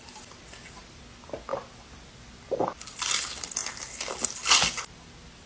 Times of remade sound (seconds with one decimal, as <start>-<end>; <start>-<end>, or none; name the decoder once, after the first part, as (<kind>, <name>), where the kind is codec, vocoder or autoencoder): none